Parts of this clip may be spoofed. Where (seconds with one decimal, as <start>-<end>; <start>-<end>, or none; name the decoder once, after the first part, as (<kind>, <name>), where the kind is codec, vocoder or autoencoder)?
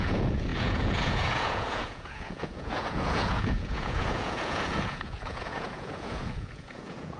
0.0-7.2 (vocoder, Vocos)